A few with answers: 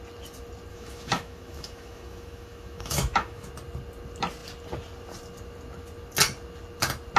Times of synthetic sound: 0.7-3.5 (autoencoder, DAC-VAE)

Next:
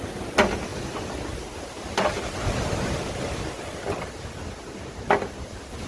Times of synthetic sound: none